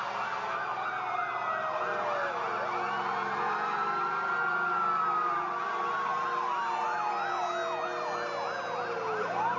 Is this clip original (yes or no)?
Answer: yes